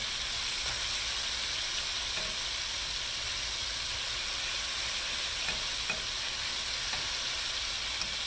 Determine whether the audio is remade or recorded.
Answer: recorded